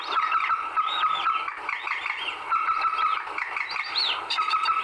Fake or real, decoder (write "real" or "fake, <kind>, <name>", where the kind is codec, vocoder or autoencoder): fake, vocoder, BigVGAN v2